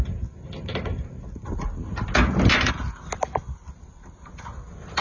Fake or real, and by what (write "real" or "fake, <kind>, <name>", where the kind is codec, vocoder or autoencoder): real